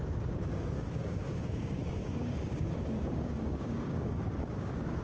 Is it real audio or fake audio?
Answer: fake